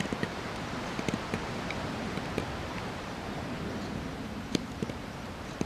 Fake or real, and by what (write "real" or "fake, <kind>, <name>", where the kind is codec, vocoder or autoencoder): fake, vocoder, BigVGAN v2